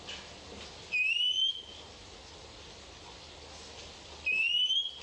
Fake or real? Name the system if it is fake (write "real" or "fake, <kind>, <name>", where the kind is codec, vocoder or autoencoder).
real